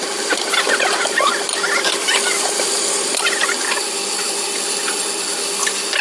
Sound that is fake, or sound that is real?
real